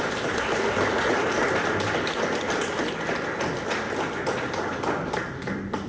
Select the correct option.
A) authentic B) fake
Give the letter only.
A